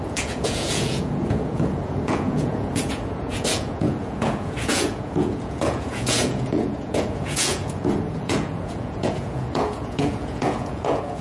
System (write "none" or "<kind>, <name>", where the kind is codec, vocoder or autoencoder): vocoder, Vocos